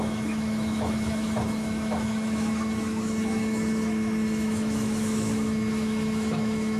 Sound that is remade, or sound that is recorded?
remade